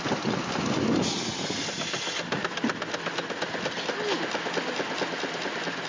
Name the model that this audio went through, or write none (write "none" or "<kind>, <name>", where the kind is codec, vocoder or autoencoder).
none